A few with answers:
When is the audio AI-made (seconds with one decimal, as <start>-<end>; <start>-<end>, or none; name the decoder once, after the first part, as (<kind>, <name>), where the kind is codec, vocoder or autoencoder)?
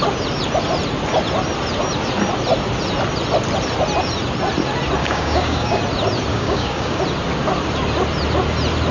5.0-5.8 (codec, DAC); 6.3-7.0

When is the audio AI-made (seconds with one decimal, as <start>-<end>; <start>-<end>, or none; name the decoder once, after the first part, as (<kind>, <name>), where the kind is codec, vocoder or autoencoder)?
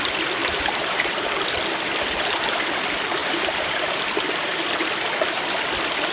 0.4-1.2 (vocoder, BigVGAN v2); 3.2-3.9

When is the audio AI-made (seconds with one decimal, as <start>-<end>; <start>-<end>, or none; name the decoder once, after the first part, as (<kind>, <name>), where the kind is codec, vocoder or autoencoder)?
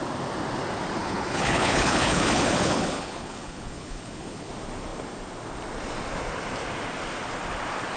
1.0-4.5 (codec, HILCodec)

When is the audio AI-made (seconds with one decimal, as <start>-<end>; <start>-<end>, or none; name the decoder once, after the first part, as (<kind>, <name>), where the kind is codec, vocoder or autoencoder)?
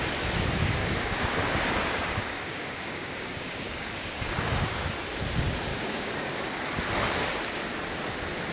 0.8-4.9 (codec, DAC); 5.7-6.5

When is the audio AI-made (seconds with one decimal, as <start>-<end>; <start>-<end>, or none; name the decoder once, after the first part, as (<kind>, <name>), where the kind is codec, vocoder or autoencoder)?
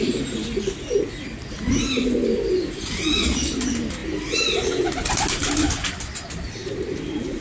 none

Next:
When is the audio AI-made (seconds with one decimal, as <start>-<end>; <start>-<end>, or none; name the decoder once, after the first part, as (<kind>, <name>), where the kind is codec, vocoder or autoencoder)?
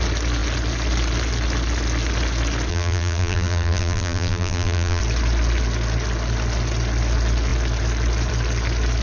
2.7-5.0 (vocoder, BigVGAN v2)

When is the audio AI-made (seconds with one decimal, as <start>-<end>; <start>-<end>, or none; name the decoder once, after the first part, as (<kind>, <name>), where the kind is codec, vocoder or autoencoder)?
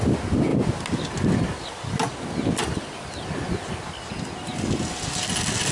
none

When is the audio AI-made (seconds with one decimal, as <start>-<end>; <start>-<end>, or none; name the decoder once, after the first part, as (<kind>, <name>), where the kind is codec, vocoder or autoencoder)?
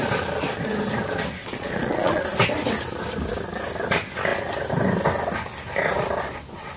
1.4-2.2 (vocoder, Vocos)